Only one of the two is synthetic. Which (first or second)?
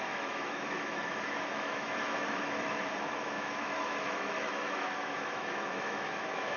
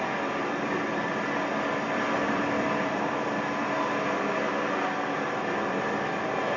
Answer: first